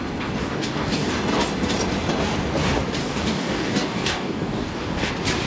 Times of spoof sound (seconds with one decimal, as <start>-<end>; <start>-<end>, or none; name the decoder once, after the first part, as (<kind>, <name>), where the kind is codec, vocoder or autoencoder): 0.4-1.1 (codec, DAC); 3.0-5.1